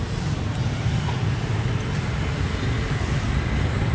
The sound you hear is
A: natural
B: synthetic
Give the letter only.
A